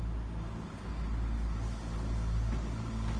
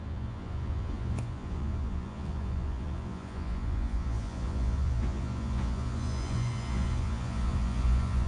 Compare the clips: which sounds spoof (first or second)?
second